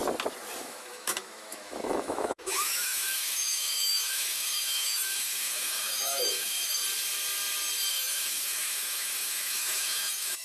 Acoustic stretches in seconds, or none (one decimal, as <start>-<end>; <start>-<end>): 0.0-0.6; 6.8-7.9